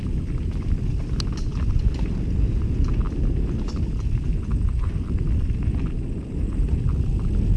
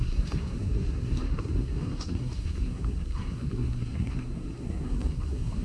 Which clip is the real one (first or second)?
first